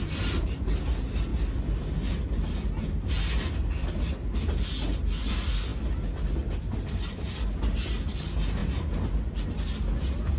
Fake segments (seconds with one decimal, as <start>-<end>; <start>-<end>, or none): none